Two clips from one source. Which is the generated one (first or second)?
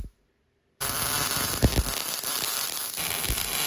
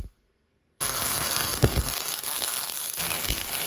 second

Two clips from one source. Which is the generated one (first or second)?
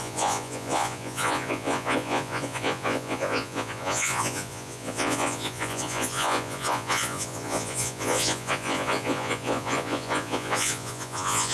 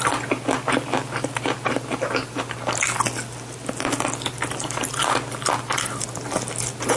first